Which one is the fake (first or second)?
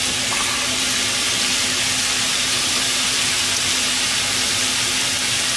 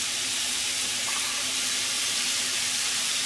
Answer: second